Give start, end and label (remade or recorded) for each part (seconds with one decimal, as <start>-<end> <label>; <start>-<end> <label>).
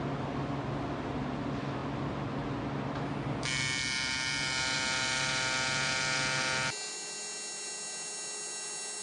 0.0-9.0 recorded